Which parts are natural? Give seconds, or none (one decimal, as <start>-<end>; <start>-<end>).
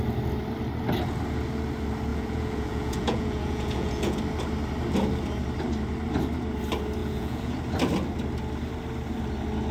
0.0-2.1; 4.2-7.0; 7.5-9.7